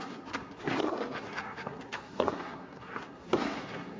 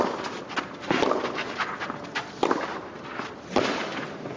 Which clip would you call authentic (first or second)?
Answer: second